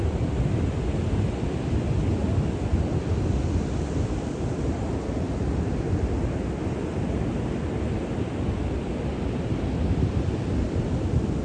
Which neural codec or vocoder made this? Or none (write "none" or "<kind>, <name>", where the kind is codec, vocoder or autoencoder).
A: none